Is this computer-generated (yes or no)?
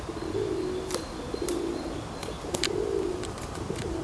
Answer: no